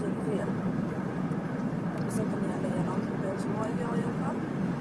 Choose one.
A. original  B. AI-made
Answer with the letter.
B